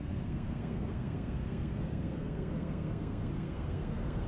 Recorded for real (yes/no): no